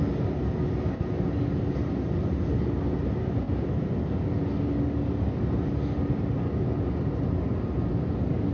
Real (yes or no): yes